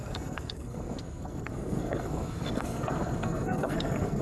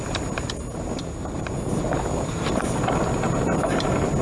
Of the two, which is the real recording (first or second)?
second